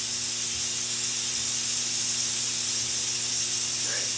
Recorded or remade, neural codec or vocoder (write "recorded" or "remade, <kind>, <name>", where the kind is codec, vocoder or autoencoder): recorded